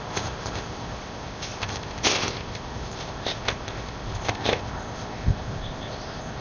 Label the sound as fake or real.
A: fake